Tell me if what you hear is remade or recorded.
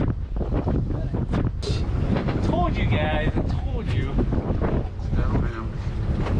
recorded